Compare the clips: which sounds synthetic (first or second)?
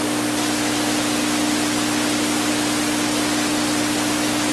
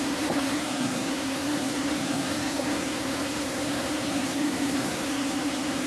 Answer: second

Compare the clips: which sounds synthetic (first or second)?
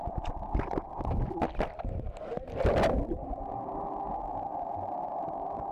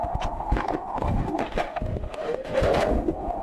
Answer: second